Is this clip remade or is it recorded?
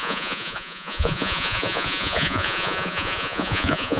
remade